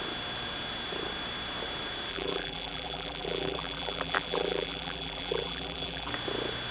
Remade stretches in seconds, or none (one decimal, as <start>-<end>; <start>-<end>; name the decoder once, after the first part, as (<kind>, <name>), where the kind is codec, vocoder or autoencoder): 2.1-6.1 (vocoder, BigVGAN v2)